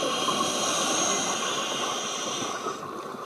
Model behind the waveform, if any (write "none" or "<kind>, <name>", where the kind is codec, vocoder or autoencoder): none